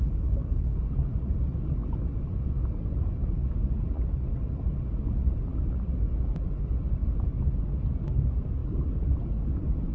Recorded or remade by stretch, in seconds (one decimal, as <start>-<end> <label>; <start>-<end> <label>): 0.0-9.9 recorded